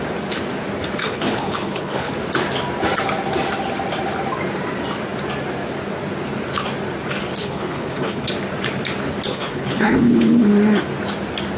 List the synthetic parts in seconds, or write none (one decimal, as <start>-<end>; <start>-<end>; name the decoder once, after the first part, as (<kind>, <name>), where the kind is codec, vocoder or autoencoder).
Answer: 1.0-2.1 (codec, HILCodec); 7.4-8.3; 9.3-10.5